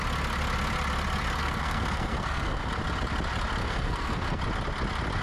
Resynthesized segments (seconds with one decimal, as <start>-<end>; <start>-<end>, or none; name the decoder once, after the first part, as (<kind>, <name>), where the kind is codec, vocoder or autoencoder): 1.4-2.7 (codec, SNAC); 3.6-4.4